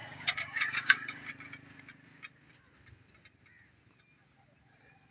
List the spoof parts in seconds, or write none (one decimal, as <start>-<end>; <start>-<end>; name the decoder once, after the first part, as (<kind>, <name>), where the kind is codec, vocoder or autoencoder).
0.0-1.3 (codec, DAC)

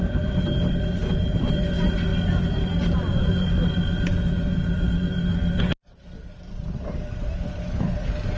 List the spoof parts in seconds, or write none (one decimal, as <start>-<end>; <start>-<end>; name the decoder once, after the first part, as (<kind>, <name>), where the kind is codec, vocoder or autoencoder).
none

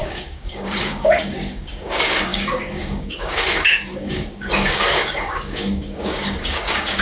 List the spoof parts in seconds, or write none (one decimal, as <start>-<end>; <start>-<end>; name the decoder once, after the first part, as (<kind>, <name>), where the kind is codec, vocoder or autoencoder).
0.0-7.0 (codec, DAC)

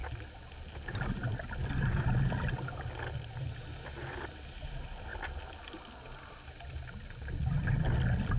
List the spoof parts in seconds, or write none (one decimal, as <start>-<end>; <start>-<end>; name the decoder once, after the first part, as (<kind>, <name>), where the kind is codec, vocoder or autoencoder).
none

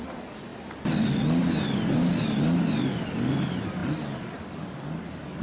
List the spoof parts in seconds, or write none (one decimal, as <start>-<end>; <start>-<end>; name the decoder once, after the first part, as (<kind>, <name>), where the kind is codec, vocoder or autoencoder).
none

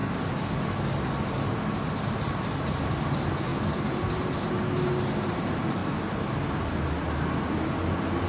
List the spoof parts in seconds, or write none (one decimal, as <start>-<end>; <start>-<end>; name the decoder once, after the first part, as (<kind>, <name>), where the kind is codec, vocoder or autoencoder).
none

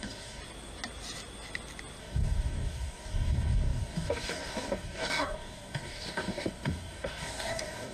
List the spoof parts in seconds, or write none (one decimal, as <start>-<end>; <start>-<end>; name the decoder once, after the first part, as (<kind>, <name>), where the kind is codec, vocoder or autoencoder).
0.0-0.4 (codec, DAC); 2.0-7.9